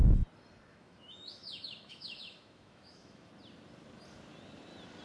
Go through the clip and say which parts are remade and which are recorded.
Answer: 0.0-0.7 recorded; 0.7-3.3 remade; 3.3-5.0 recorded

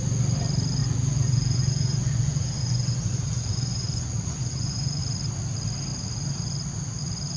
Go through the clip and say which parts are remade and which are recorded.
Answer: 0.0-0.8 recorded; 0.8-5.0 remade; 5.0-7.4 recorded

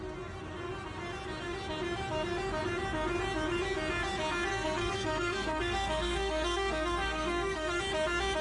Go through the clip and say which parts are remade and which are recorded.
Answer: 0.0-4.5 recorded; 4.5-7.8 remade; 7.8-8.4 recorded